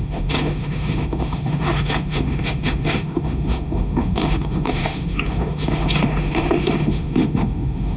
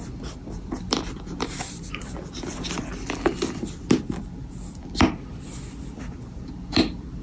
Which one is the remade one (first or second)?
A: first